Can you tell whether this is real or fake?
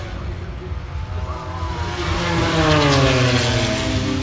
real